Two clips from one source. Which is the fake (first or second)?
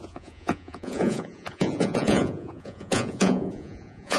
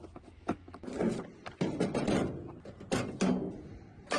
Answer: first